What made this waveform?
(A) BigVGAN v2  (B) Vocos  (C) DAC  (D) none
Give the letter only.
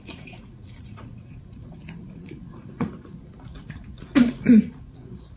B